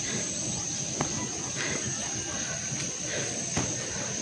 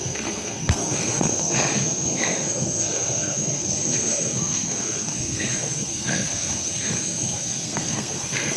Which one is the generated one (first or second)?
second